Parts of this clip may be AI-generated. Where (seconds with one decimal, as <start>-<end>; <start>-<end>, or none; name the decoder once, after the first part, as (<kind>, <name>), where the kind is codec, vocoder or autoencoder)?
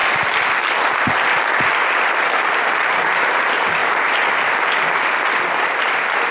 0.0-3.3 (vocoder, BigVGAN v2); 3.8-6.3